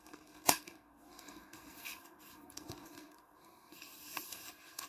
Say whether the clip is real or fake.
fake